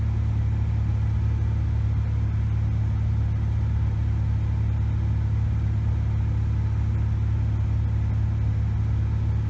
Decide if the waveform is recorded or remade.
recorded